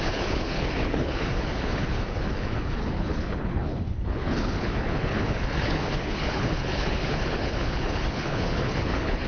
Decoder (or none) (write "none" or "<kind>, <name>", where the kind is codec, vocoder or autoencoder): codec, HILCodec